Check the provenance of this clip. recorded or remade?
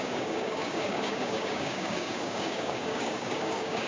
remade